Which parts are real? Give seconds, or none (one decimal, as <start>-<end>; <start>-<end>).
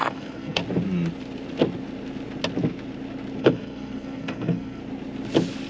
0.6-3.4; 4.8-5.7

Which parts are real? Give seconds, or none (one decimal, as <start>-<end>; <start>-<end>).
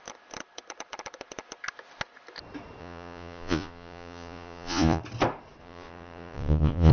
0.0-2.8; 5.0-5.6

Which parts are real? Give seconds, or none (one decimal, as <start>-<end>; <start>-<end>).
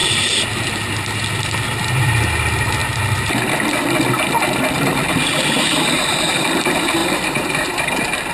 0.0-8.3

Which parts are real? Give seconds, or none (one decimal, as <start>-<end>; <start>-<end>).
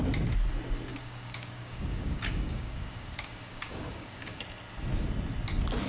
0.0-0.9; 4.4-5.9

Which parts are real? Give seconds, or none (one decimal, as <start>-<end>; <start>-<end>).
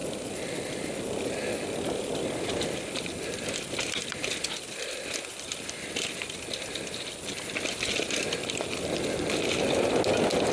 0.0-10.5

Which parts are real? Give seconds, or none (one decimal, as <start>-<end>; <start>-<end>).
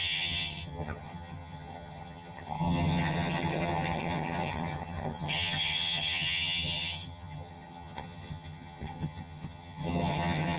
none